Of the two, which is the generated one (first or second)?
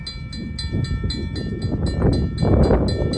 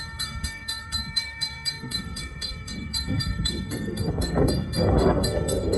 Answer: second